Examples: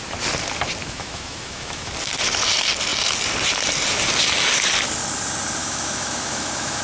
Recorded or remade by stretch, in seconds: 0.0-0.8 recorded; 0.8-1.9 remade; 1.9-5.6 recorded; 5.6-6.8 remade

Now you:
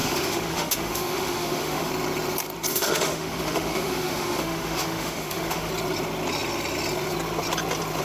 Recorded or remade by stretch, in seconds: 0.0-1.9 remade; 1.9-2.7 recorded; 2.7-5.7 remade; 5.7-8.0 recorded

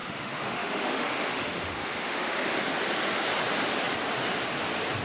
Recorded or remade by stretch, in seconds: 0.0-2.6 remade; 2.6-5.0 recorded